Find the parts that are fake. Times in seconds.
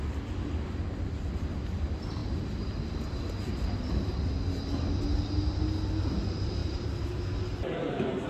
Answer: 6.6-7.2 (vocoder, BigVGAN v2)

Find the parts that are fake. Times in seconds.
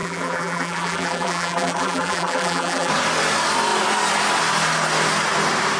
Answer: 0.0-2.9 (vocoder, BigVGAN v2)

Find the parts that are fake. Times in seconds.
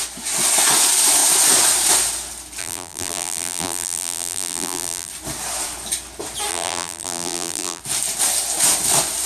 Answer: 2.6-5.1 (vocoder, BigVGAN v2); 6.5-7.8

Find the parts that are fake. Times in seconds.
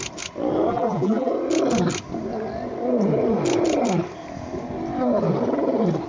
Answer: 0.7-1.3 (vocoder, BigVGAN v2)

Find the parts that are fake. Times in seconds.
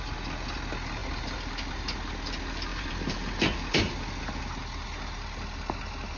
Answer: 2.7-3.9 (vocoder, BigVGAN v2)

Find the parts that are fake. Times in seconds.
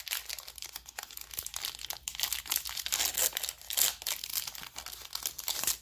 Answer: none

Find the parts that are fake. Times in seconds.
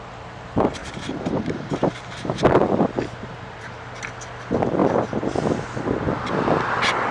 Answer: 0.8-4.1 (vocoder, BigVGAN v2)